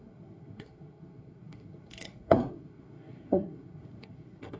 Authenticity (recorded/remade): remade